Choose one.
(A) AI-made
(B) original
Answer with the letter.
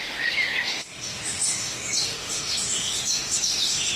A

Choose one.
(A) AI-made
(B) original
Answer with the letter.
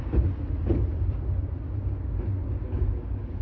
B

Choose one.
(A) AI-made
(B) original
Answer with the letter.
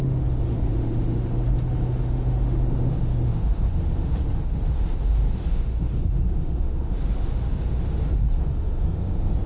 A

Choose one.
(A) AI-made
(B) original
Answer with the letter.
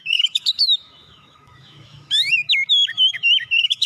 A